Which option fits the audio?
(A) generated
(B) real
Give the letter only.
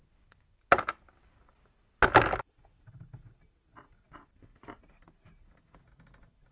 B